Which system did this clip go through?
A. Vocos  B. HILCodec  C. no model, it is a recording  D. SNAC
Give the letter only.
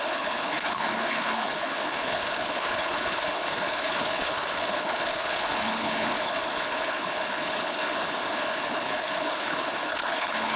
B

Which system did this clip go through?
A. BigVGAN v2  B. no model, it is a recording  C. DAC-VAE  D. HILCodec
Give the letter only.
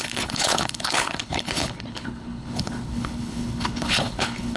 D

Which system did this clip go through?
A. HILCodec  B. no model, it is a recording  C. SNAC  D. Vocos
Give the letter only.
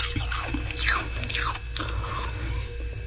B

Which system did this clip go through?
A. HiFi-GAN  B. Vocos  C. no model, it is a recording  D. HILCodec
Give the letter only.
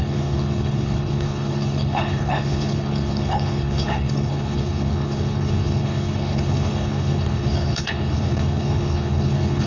D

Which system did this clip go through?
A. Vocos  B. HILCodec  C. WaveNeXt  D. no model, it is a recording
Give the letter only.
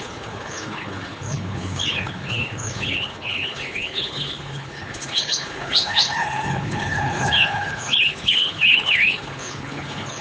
B